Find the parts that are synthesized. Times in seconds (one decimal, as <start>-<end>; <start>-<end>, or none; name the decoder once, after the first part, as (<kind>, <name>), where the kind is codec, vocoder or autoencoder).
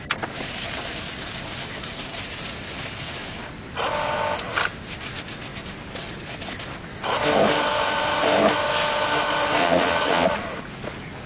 9.6-10.4 (vocoder, Vocos)